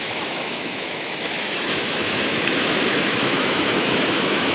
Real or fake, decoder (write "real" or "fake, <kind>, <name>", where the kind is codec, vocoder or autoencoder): fake, autoencoder, DAC-VAE